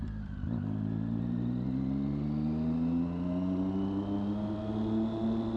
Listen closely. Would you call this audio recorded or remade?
recorded